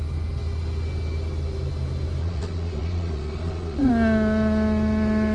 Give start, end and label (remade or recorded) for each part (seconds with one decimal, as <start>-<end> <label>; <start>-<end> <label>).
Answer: 0.0-2.2 recorded; 2.2-3.9 remade; 3.9-5.3 recorded